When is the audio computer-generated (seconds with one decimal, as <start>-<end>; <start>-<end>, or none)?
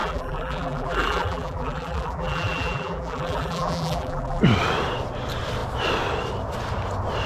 0.0-4.4